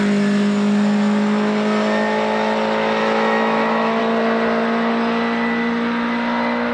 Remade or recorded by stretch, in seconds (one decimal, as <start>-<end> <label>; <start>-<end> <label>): 0.0-3.0 recorded; 3.0-4.0 remade; 4.0-6.7 recorded